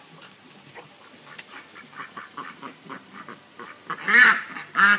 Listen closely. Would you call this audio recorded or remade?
remade